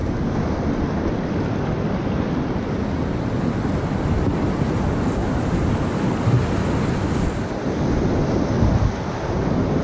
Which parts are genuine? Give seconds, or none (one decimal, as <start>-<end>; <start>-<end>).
0.0-9.8